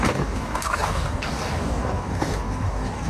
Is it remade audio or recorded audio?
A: remade